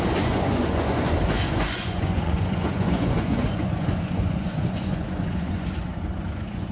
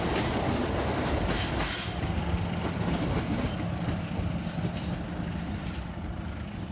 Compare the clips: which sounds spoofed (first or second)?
first